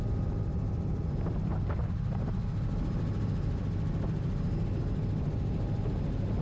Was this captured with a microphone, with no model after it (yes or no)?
yes